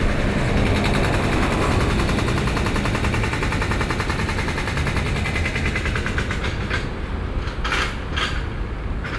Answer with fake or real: real